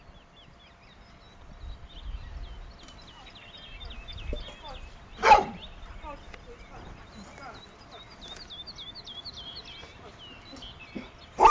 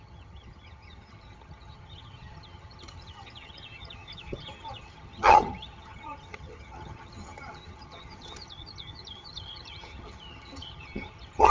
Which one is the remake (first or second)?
second